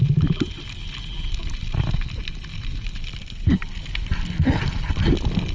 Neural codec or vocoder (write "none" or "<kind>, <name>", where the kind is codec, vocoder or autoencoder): none